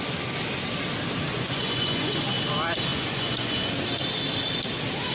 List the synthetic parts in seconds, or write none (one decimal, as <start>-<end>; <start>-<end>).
1.3-2.2; 2.9-3.7